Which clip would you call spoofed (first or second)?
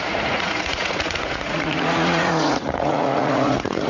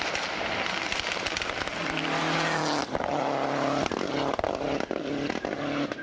first